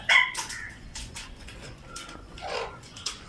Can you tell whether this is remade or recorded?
remade